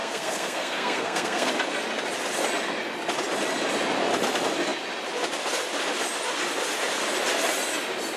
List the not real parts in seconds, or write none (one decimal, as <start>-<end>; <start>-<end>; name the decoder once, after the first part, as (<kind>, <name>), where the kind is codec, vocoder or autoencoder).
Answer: 0.0-1.5 (codec, SNAC)